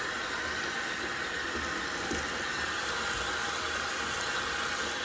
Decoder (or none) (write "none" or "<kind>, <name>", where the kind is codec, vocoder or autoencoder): none